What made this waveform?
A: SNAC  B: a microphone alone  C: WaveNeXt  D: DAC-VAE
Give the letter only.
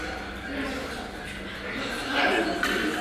B